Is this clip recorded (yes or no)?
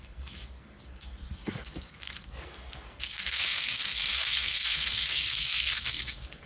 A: no